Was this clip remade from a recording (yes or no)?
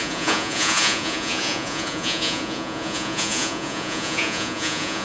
yes